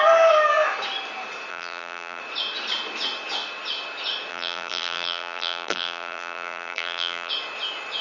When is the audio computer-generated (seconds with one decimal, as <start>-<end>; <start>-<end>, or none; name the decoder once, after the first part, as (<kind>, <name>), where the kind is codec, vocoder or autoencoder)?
1.5-2.2 (vocoder, BigVGAN v2); 4.3-7.3